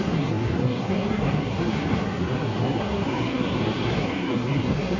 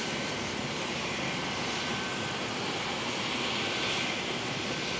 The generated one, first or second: first